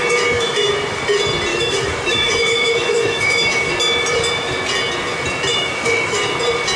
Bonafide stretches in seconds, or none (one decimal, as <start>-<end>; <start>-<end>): 0.7-1.5; 3.7-5.5; 6.2-6.8